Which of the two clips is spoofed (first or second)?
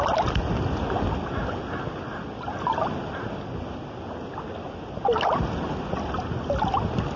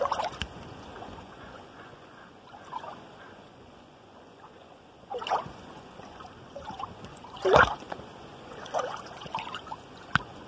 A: second